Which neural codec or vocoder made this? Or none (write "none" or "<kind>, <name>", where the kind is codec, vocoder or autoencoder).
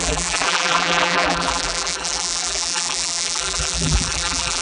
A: vocoder, BigVGAN v2